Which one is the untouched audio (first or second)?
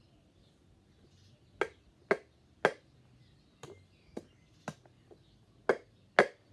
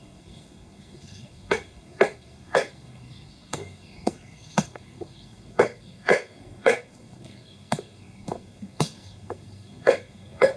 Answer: first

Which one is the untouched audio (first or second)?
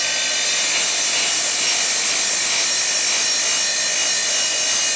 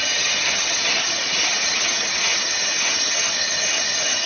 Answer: first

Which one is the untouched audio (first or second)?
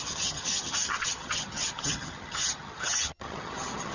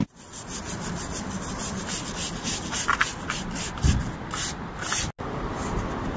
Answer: second